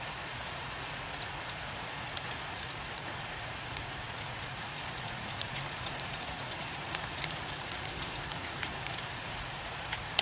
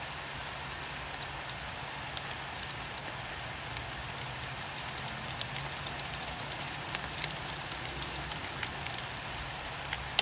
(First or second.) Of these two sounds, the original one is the second